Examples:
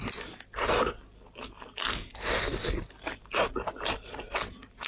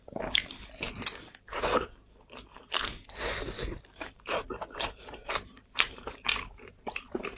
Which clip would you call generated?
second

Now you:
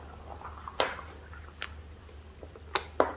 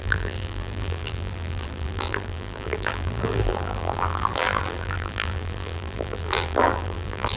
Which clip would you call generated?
second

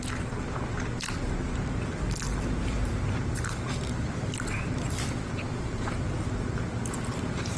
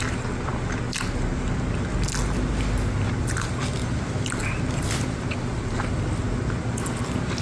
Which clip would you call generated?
first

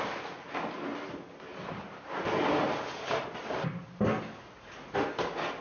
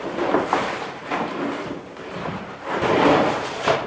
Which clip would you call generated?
second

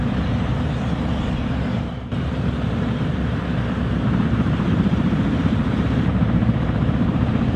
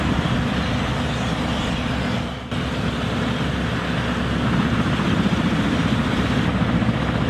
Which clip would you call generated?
first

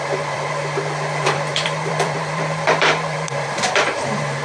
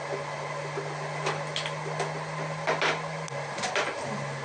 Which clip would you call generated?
first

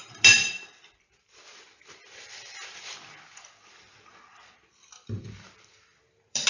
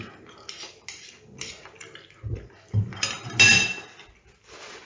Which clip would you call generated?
first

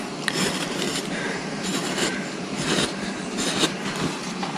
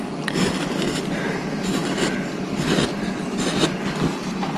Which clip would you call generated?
first